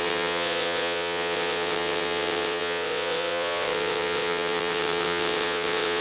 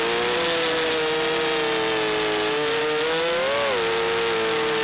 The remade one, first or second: first